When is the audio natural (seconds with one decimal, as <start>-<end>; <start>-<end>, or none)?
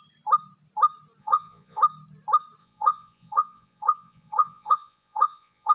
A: 0.0-1.2; 1.8-2.6